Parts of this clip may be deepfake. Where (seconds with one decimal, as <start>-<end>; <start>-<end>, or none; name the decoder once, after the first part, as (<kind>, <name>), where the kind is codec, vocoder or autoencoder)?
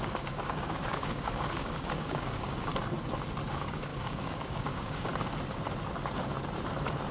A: 0.0-2.7 (codec, DAC); 3.5-5.1